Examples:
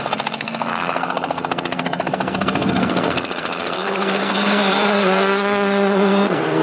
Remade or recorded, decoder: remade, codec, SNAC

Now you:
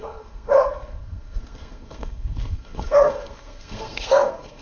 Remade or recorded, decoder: remade, codec, SNAC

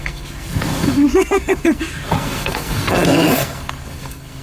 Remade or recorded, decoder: remade, codec, SNAC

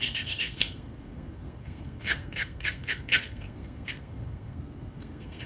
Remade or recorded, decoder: remade, codec, SNAC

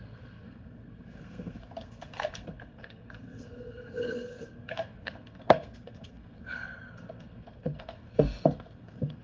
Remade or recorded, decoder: remade, codec, SNAC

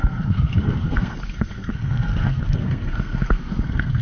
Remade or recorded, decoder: remade, codec, SNAC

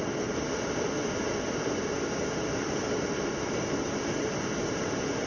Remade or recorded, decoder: recorded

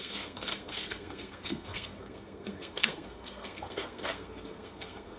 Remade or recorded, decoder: remade, codec, SNAC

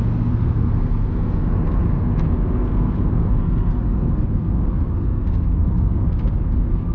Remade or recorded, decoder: remade, codec, SNAC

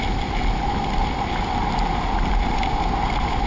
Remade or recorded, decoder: recorded